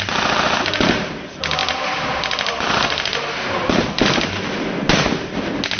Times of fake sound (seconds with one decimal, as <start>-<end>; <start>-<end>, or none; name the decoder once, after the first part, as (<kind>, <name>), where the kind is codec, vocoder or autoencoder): 1.6-4.4 (vocoder, BigVGAN v2)